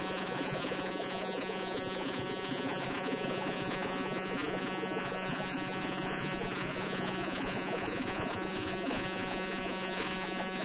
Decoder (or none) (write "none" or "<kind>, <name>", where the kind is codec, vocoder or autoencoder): vocoder, Vocos